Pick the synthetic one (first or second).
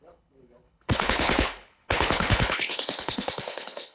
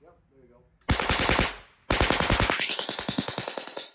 first